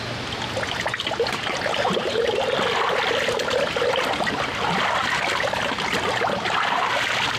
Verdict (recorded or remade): recorded